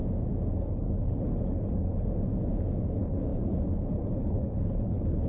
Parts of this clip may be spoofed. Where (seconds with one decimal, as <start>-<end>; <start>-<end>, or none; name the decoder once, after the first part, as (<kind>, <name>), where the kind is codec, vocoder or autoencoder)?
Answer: 0.6-2.1 (codec, HILCodec); 2.9-5.3